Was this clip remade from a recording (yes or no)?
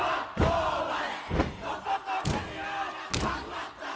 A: no